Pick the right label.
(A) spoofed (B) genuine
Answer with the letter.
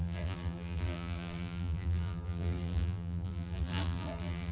A